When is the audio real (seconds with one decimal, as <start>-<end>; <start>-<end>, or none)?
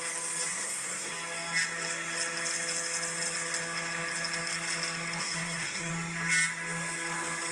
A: 0.0-0.5; 1.1-5.2; 5.9-7.5